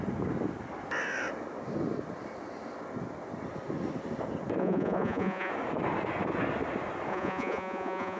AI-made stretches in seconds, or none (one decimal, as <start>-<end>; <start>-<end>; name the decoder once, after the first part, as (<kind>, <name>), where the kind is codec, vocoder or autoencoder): 4.6-5.5 (vocoder, Vocos); 7.1-8.2